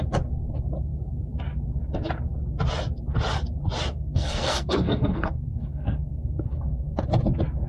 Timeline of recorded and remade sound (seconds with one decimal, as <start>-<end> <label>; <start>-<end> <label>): 0.0-3.9 recorded; 3.9-7.0 remade; 7.0-7.7 recorded